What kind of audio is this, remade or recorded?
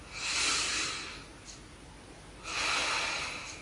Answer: recorded